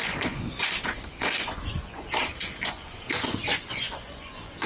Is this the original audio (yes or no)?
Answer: no